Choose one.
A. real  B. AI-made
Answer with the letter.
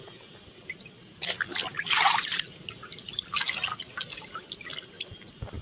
A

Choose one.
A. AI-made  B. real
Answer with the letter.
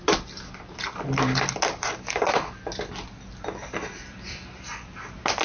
B